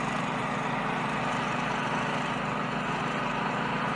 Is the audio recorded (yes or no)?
yes